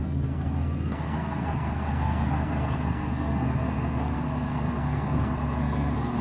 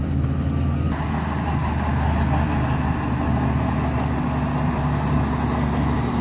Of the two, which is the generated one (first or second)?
first